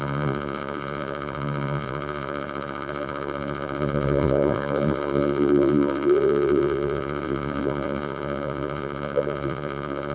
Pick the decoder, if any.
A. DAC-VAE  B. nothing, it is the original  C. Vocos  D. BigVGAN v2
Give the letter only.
C